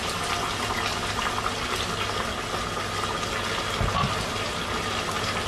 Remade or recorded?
recorded